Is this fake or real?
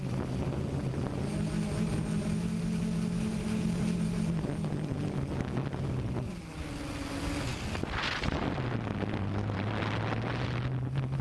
real